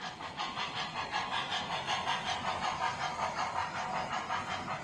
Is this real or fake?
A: real